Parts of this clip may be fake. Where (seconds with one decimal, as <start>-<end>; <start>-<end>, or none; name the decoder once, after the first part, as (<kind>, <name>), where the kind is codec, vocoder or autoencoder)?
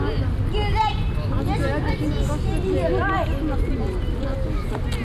none